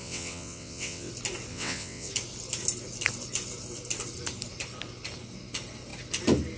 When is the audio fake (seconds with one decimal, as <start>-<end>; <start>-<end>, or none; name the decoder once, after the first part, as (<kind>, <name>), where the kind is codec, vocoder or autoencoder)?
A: 0.0-1.1 (vocoder, WaveNeXt); 1.5-2.1